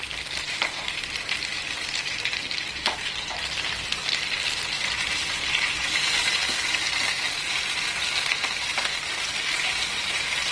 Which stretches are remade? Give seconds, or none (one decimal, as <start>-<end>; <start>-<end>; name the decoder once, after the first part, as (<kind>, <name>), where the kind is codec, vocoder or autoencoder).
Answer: 0.0-4.0 (vocoder, BigVGAN v2); 4.7-10.5